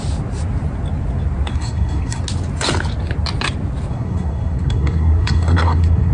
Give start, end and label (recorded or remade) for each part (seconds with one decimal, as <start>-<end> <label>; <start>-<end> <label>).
0.0-1.5 recorded; 1.5-2.2 remade; 2.2-3.9 recorded; 3.9-6.1 remade